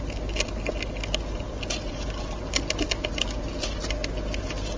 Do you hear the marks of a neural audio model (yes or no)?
no